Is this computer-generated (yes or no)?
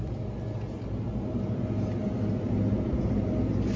no